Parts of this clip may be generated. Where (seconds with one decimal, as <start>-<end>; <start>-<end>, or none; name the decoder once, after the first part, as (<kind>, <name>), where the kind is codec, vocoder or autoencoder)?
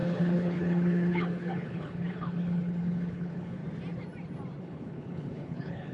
0.0-3.6 (codec, HILCodec); 4.6-5.9